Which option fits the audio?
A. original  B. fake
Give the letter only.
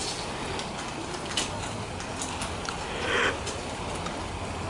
A